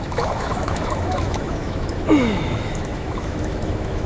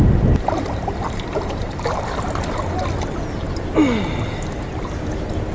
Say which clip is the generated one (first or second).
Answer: first